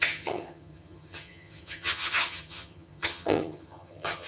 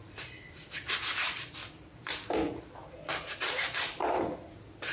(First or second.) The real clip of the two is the second